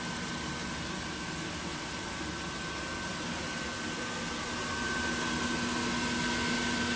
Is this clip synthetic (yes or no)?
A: no